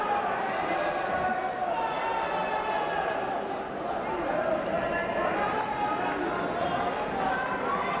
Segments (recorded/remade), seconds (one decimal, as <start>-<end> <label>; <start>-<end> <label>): 0.0-8.0 recorded